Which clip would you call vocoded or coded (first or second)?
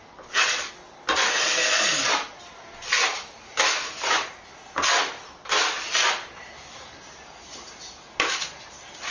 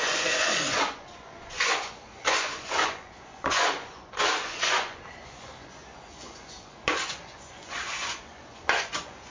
second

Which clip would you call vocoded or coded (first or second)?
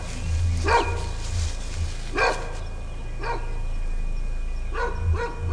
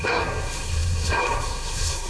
second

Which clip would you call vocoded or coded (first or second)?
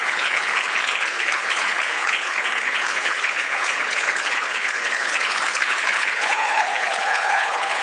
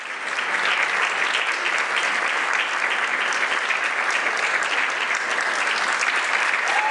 first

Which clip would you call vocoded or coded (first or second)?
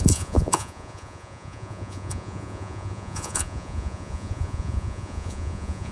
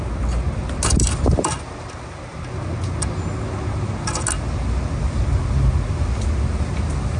first